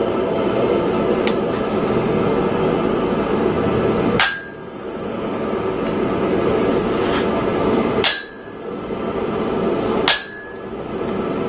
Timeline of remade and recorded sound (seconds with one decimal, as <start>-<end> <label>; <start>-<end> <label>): 0.0-7.5 recorded; 7.5-10.0 remade; 10.0-11.5 recorded